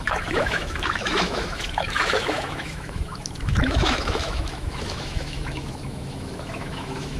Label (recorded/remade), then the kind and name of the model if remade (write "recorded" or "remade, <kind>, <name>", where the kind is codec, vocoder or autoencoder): remade, autoencoder, DAC-VAE